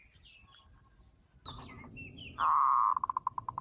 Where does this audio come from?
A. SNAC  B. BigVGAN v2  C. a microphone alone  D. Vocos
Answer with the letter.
C